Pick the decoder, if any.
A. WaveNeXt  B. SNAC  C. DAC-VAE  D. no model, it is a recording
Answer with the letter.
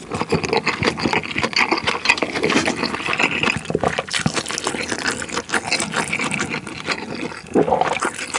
D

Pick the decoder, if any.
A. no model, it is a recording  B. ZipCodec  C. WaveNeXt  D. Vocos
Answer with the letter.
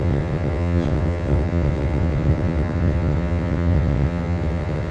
C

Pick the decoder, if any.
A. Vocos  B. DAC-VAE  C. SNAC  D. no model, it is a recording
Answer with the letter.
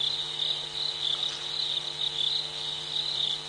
D